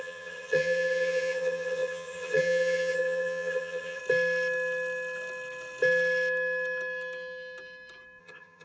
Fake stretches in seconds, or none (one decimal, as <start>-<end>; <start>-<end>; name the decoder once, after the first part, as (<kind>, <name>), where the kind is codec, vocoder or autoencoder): 0.0-4.0 (vocoder, HiFi-GAN); 8.2-8.6